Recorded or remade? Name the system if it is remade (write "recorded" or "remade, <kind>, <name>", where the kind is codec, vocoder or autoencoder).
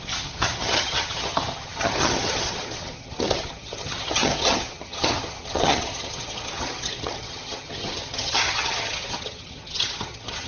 remade, vocoder, HiFi-GAN